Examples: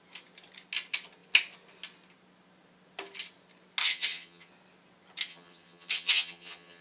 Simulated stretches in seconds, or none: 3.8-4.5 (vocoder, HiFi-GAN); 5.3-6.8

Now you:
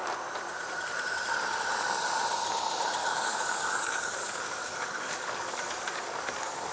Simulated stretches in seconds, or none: 3.0-6.7 (codec, DAC)